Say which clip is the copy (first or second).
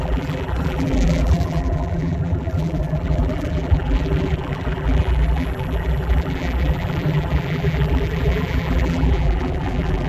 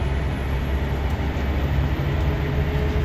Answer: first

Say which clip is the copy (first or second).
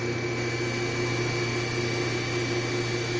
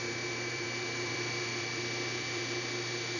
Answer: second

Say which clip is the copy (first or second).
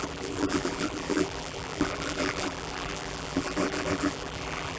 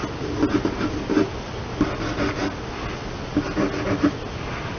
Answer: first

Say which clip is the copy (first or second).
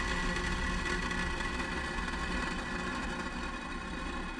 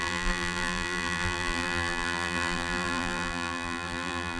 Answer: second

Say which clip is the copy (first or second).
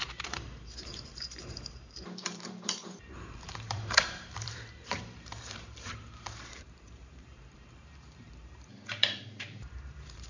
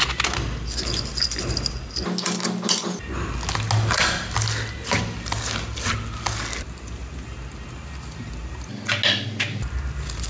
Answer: first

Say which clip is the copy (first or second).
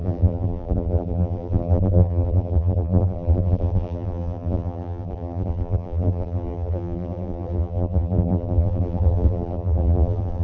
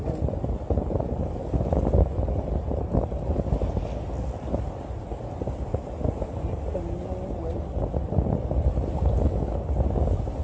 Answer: first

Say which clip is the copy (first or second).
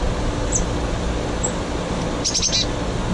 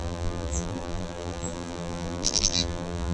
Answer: second